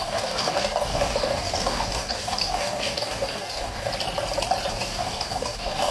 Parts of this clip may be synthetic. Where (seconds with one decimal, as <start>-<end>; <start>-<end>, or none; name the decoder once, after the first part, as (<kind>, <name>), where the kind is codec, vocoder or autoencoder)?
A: 0.0-3.9 (codec, DAC); 4.7-5.9